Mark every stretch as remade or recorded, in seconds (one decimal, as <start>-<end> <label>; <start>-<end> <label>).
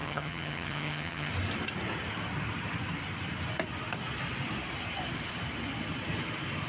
0.0-1.3 remade; 1.3-6.7 recorded